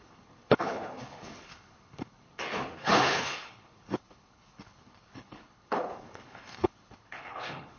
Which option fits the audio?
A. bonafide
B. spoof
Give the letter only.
B